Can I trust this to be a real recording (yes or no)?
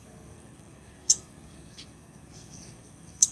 no